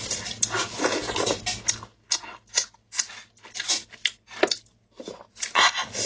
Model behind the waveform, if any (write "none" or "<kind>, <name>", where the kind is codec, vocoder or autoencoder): none